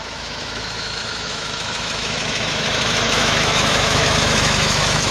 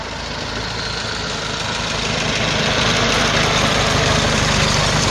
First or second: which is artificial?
first